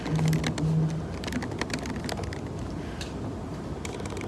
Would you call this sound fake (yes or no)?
no